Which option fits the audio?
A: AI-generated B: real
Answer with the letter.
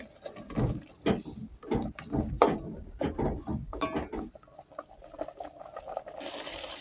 B